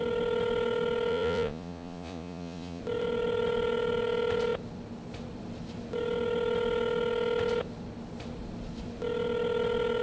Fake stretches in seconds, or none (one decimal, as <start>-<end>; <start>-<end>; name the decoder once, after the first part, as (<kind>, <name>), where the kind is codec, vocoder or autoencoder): 1.1-2.8 (vocoder, Vocos)